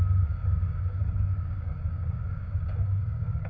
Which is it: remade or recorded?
remade